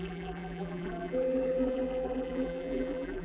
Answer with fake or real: fake